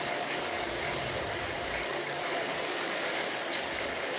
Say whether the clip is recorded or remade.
remade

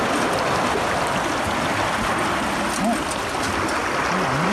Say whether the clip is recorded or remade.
recorded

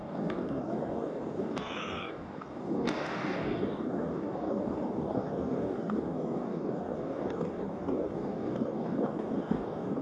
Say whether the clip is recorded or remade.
remade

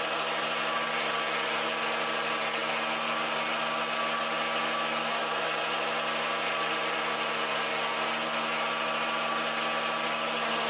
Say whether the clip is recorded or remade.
recorded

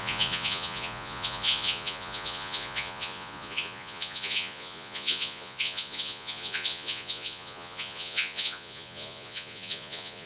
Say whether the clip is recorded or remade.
remade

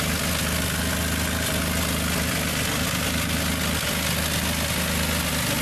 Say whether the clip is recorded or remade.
recorded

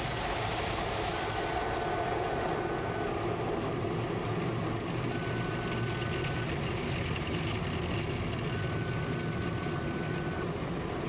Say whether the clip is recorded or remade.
recorded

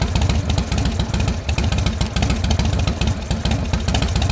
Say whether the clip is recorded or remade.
recorded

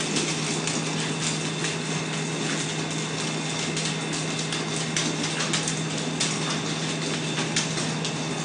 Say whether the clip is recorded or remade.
recorded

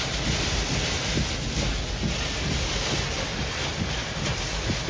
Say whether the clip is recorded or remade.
recorded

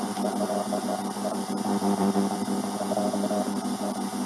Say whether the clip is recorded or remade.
remade